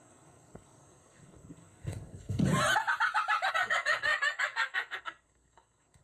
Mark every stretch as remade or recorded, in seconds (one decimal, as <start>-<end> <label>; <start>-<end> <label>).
0.0-2.4 remade; 2.4-3.5 recorded; 3.5-6.0 remade